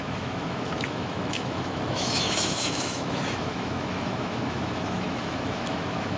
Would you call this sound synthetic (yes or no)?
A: yes